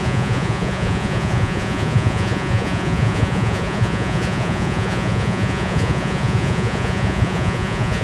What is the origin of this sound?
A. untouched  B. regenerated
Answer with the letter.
B